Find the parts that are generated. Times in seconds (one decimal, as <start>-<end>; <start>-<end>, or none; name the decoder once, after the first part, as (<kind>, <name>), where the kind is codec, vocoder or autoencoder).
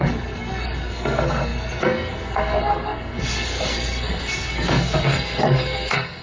0.0-6.2 (codec, SNAC)